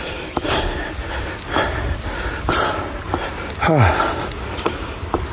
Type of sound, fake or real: real